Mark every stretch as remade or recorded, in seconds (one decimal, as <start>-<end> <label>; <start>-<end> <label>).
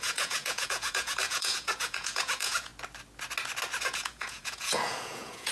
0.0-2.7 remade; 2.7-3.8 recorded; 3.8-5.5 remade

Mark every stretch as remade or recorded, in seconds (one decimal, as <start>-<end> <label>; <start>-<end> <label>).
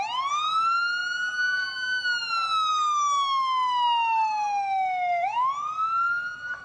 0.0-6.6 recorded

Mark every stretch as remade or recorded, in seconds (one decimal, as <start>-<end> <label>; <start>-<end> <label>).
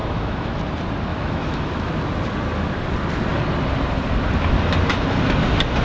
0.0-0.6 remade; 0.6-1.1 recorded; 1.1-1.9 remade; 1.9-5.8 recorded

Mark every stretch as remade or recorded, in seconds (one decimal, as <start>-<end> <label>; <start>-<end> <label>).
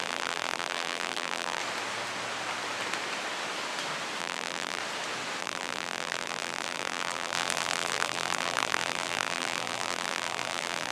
0.0-1.6 remade; 1.6-4.2 recorded; 4.2-4.8 remade; 4.8-5.4 recorded; 5.4-10.9 remade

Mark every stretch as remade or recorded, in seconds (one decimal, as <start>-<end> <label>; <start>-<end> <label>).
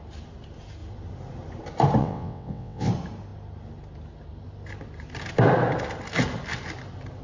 0.0-2.0 recorded; 2.0-2.9 remade; 2.9-7.2 recorded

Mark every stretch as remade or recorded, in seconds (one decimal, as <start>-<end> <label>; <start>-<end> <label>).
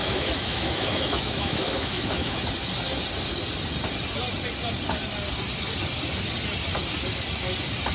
0.0-2.5 remade; 2.5-7.9 recorded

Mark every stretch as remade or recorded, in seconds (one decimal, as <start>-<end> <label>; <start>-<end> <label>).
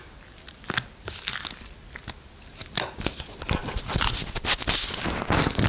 0.0-5.7 recorded